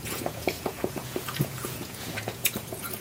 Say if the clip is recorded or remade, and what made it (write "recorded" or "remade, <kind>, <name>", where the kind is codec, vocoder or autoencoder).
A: remade, vocoder, Vocos